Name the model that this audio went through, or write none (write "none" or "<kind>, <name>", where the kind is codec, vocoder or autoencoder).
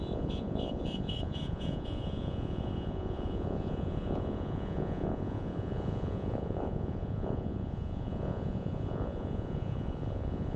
vocoder, Vocos